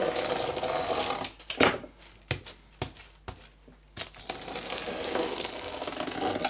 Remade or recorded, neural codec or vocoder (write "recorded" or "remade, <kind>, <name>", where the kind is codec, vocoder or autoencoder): recorded